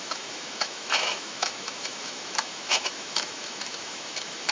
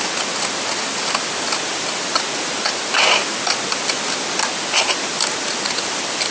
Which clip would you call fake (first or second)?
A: first